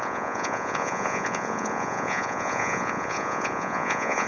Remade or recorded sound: remade